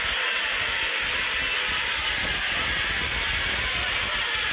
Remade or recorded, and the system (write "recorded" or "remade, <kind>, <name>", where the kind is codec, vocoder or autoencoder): recorded